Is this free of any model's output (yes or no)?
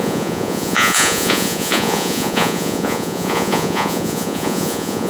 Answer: no